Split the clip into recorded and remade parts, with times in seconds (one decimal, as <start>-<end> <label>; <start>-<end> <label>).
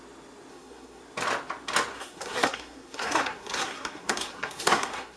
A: 0.0-0.5 recorded; 0.5-1.0 remade; 1.0-1.9 recorded; 1.9-5.2 remade